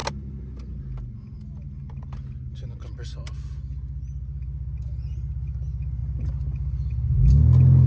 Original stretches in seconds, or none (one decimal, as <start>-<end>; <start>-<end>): 0.0-7.9